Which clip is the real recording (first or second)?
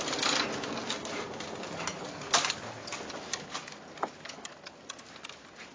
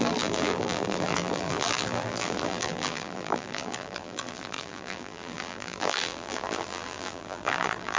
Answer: first